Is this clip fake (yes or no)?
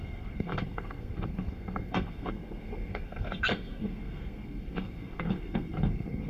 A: yes